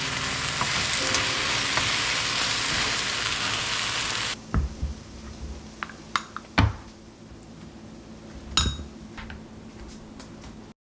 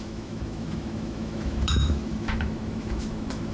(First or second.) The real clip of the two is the first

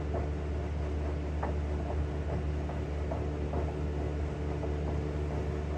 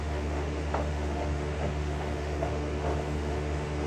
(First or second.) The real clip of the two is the first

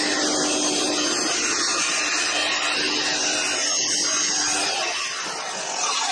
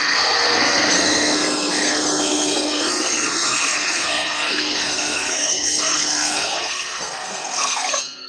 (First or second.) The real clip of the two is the first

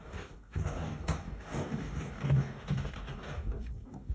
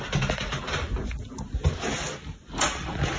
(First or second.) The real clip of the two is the second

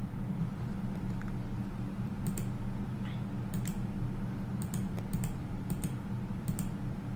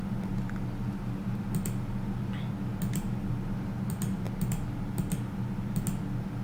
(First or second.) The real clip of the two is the second